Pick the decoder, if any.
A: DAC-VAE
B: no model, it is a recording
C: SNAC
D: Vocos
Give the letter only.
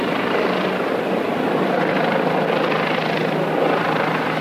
B